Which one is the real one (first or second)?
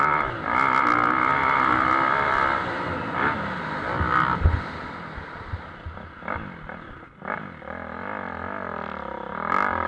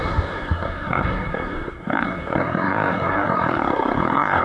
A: first